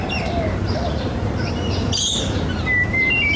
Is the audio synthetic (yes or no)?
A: yes